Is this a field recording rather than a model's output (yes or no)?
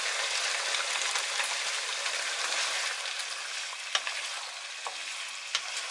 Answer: yes